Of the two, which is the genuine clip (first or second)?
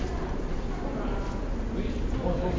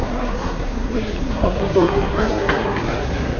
first